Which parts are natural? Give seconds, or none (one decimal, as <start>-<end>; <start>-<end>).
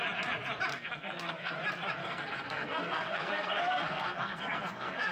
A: 0.0-0.7; 1.5-2.0